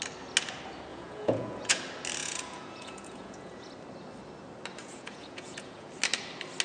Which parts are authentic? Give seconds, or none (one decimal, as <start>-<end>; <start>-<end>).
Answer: 0.0-0.9; 1.8-2.2; 3.7-4.8; 5.9-6.6